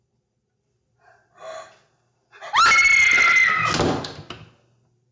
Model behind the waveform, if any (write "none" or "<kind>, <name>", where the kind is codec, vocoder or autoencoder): none